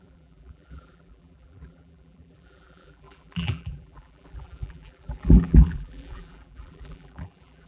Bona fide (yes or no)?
no